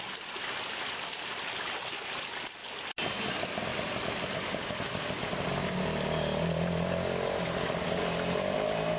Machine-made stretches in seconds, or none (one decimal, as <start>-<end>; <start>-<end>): none